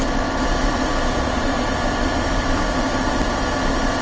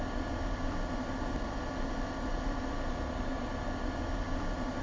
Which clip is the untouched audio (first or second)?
second